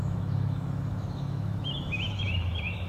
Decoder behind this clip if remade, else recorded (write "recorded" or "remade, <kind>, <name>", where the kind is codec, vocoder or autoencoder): remade, autoencoder, DAC-VAE